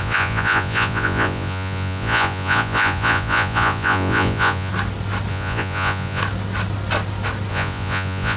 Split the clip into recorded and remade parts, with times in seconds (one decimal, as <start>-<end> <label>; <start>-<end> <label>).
0.0-4.7 remade; 4.7-5.3 recorded; 5.3-6.2 remade; 6.2-7.5 recorded; 7.5-8.4 remade